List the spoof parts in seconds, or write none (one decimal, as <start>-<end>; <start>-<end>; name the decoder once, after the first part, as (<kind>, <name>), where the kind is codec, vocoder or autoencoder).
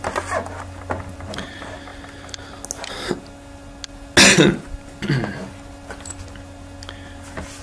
none